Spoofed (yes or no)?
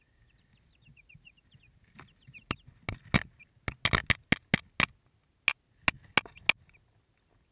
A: no